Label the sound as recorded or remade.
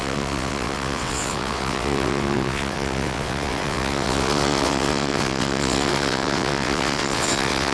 remade